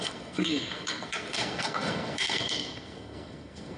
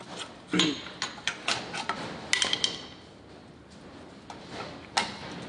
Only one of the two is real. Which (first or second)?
second